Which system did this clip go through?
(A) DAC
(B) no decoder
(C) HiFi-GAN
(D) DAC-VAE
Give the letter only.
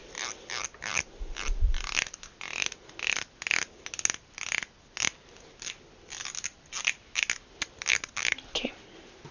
B